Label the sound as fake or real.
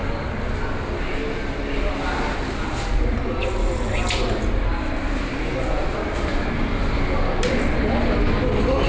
real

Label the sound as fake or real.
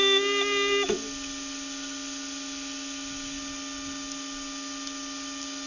real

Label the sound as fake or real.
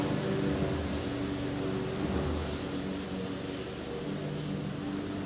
real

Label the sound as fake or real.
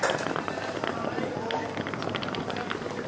real